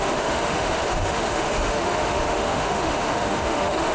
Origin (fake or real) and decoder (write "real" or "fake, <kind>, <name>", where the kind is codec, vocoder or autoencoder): fake, autoencoder, DAC-VAE